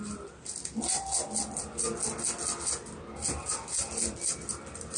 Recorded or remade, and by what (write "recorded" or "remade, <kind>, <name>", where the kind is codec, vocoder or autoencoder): recorded